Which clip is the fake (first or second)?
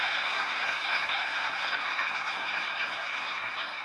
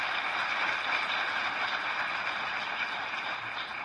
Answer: first